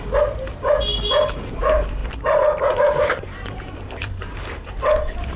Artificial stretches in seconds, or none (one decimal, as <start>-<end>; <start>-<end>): 0.0-0.9; 1.5-5.4